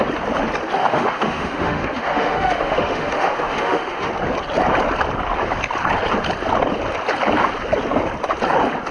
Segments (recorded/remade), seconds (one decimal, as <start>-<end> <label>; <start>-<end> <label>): 0.0-0.8 recorded; 0.8-4.1 remade; 4.1-8.9 recorded